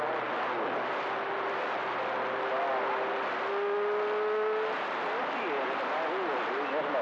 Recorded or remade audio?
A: recorded